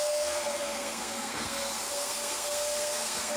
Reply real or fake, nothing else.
fake